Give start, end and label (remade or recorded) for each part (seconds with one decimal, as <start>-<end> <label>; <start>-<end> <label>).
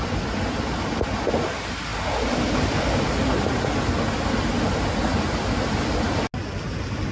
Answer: 0.0-7.1 recorded